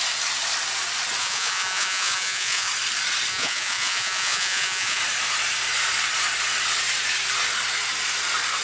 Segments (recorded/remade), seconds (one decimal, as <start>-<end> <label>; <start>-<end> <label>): 0.0-1.2 recorded; 1.2-2.7 remade; 2.7-3.3 recorded; 3.3-5.0 remade; 5.0-8.6 recorded